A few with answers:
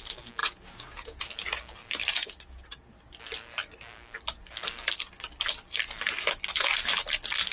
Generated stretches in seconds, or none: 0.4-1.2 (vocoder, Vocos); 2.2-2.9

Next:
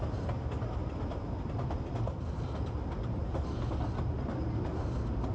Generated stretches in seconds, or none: none

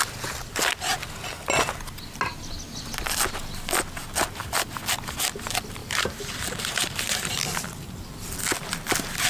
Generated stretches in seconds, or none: 5.8-8.4 (vocoder, BigVGAN v2)

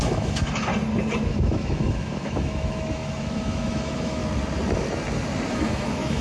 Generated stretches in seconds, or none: 0.0-0.7 (autoencoder, DAC-VAE); 1.3-4.2; 5.5-6.2

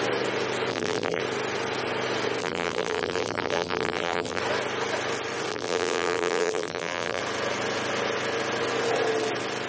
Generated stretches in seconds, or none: 0.7-1.2 (vocoder, BigVGAN v2); 2.4-4.4; 5.5-7.2

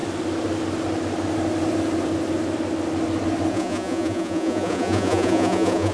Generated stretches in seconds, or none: 3.5-5.9 (vocoder, Vocos)

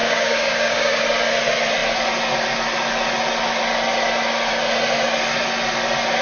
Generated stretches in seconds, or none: 0.0-1.0 (codec, DAC)

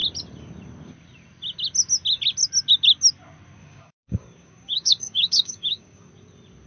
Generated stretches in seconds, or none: 3.6-6.1 (codec, DAC)